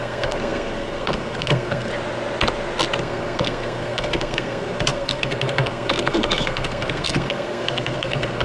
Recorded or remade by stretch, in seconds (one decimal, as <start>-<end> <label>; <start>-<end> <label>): 0.0-1.9 remade; 1.9-3.0 recorded; 3.0-8.4 remade